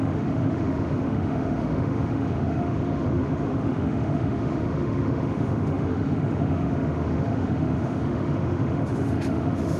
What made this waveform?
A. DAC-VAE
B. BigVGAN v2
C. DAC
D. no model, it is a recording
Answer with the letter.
A